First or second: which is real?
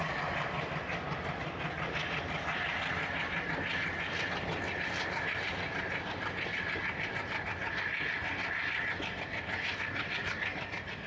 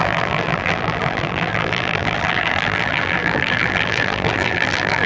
first